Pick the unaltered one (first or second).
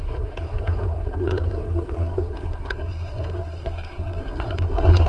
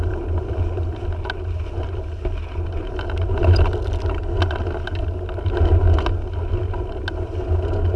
second